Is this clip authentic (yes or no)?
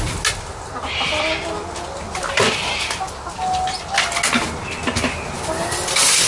yes